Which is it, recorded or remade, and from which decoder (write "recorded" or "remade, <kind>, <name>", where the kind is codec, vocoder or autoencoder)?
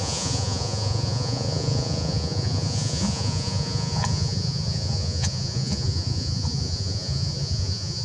remade, vocoder, Vocos